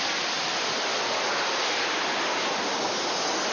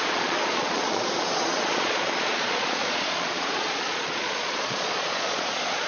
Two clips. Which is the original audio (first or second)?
first